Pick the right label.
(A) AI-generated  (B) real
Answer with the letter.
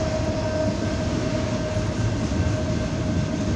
B